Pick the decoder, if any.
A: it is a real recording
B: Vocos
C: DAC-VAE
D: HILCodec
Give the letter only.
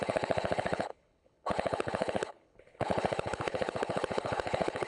D